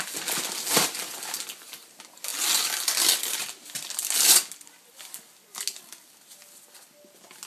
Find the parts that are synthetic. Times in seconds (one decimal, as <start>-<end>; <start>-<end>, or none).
none